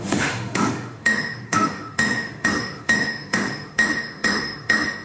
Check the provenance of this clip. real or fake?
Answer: fake